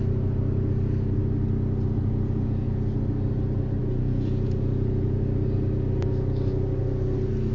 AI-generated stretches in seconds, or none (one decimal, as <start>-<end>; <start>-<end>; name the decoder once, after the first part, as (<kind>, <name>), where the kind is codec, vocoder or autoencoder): 2.0-2.9 (vocoder, Vocos); 3.8-5.2